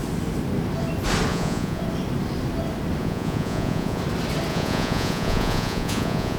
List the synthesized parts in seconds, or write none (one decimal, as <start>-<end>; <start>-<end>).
1.3-1.8; 3.0-4.0; 4.5-6.4